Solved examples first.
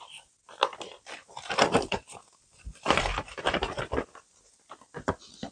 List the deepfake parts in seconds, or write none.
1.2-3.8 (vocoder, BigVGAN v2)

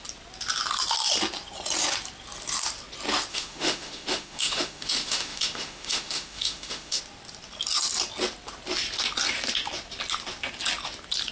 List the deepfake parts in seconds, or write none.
3.3-7.0 (autoencoder, DAC-VAE)

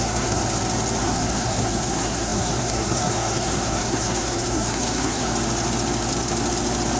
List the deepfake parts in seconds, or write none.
0.0-0.4 (codec, SNAC); 1.0-5.3

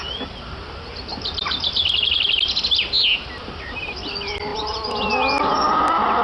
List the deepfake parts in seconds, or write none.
none

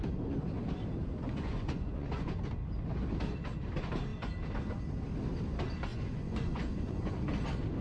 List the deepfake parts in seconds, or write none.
1.0-2.4 (vocoder, Vocos); 5.9-7.1

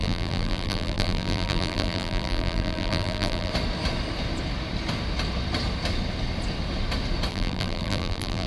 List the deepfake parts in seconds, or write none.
0.0-3.5 (vocoder, BigVGAN v2); 7.3-8.5

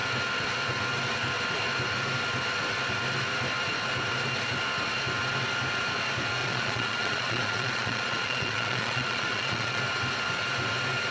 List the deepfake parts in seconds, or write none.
6.4-9.8 (vocoder, Vocos)